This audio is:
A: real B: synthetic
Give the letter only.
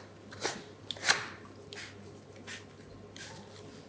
A